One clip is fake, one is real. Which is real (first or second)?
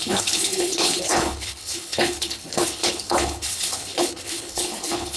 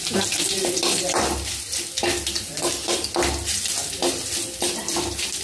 second